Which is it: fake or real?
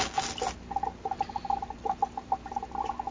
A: real